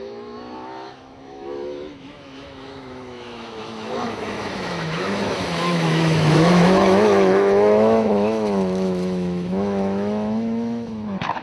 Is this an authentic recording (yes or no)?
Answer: no